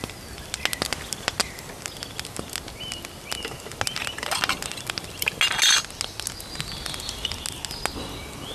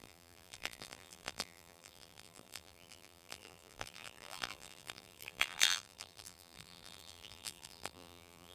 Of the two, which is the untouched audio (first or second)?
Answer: first